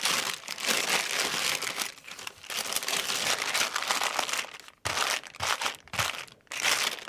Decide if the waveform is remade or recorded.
recorded